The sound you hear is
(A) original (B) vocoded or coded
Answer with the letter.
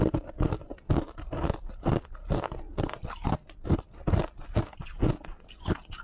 A